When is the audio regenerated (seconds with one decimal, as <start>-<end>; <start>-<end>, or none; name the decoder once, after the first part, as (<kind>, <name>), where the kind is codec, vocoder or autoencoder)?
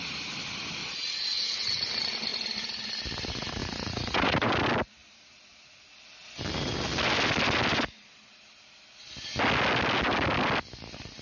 0.8-1.9 (vocoder, Vocos); 3.6-4.5